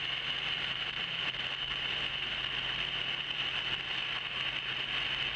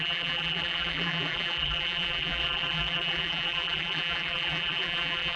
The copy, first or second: second